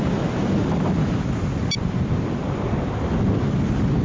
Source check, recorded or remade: recorded